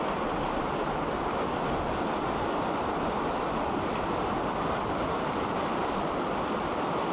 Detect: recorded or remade recorded